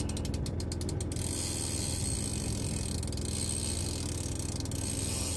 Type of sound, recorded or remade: recorded